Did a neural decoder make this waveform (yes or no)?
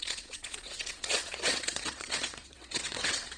yes